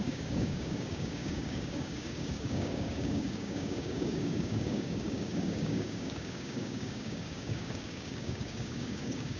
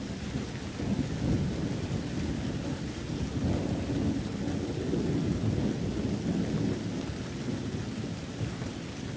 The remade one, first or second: first